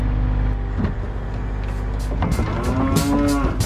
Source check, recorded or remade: recorded